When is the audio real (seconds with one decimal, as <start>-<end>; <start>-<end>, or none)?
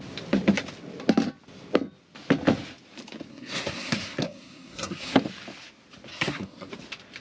0.0-3.3; 5.2-6.1; 6.7-7.2